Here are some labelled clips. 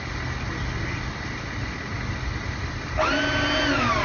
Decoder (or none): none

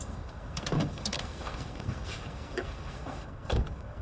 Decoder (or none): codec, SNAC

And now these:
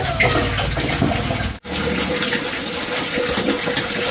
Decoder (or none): none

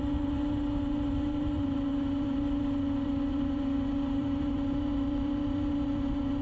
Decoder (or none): vocoder, BigVGAN v2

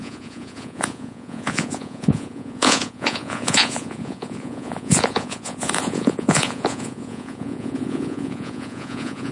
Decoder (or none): vocoder, Vocos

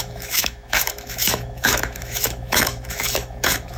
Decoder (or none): autoencoder, DAC-VAE